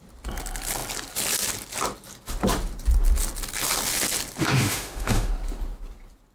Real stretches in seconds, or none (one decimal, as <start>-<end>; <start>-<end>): 0.0-4.4; 5.3-6.3